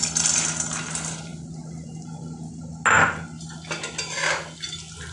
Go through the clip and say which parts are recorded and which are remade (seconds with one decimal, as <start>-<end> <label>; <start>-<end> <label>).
0.0-5.1 recorded